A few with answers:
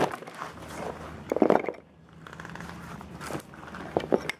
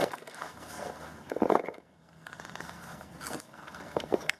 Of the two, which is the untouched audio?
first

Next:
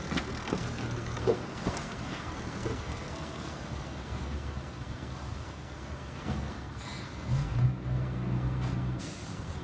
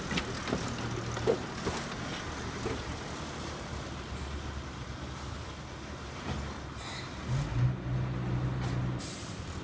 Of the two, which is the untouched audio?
second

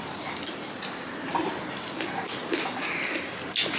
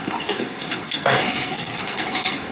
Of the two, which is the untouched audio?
first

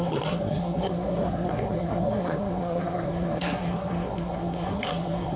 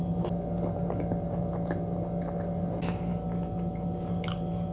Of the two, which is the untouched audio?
second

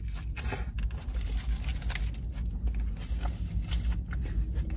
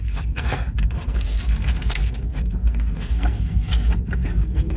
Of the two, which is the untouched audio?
first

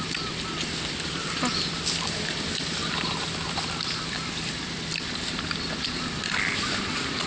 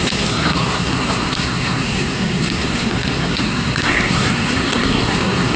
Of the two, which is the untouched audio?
first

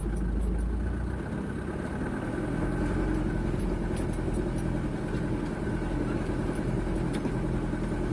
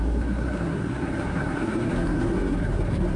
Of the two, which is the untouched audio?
first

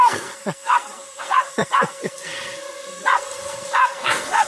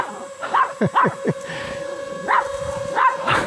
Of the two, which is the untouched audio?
second